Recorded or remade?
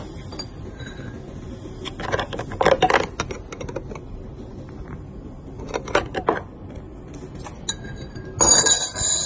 recorded